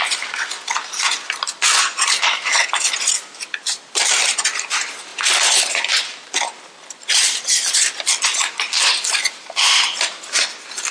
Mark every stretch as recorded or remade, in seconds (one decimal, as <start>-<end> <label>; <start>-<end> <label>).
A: 0.0-10.9 recorded